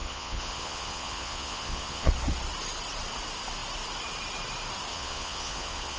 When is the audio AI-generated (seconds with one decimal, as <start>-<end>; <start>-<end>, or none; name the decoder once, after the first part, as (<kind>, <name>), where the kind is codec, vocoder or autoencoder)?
0.0-2.1 (vocoder, Vocos); 4.9-6.0